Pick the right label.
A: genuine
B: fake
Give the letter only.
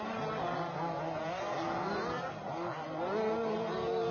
A